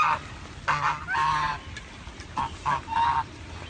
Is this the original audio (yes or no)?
yes